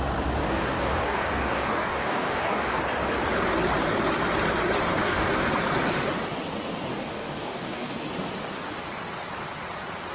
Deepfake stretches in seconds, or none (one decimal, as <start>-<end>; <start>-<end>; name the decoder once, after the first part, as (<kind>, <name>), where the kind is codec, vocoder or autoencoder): 0.4-2.8 (codec, DAC); 4.9-5.5; 6.9-8.0